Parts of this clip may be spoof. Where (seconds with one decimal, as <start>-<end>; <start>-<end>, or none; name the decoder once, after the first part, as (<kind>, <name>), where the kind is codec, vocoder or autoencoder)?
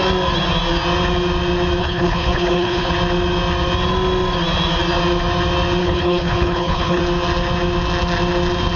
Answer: 1.8-2.9 (codec, HILCodec); 5.8-7.0